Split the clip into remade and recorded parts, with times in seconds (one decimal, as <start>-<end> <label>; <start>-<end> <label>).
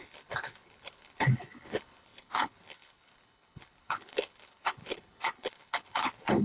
0.0-6.4 remade